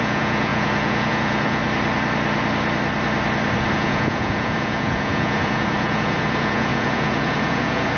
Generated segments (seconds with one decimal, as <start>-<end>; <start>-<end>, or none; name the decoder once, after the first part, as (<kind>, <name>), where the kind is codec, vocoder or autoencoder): 0.0-1.6 (vocoder, Vocos); 3.7-8.0

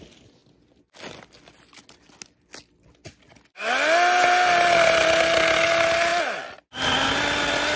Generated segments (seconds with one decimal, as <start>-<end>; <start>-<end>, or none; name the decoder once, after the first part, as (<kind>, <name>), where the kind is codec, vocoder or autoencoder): none

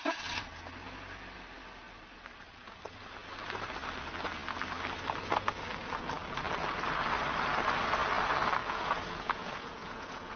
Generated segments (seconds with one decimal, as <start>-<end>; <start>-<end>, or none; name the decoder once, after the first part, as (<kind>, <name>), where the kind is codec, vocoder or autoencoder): 8.6-10.4 (vocoder, Vocos)

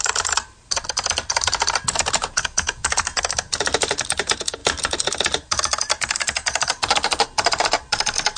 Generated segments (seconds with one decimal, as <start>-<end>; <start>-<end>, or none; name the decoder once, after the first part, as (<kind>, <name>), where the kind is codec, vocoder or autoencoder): 2.2-3.0 (vocoder, Vocos)

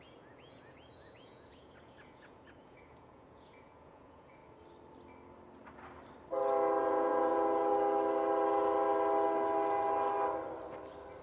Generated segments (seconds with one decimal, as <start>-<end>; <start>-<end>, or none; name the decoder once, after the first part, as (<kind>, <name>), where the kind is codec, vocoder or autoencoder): 0.0-4.4 (vocoder, Vocos); 6.8-7.7